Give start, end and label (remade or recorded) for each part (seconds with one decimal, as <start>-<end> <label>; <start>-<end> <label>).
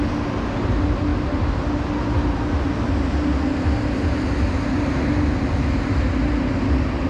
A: 0.0-7.1 recorded